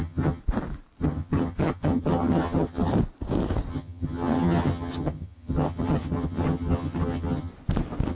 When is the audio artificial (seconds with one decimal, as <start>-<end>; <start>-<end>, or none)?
0.0-0.4; 1.0-2.9; 3.7-7.5